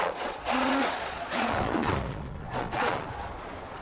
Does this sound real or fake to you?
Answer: fake